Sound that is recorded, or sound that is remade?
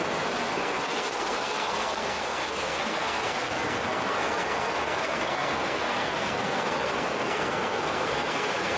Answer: remade